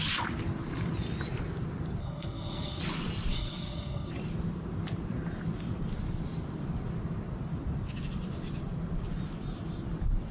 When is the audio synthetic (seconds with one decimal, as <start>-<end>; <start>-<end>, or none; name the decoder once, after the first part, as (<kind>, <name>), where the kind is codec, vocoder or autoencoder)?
2.0-2.8 (codec, SNAC); 3.3-4.1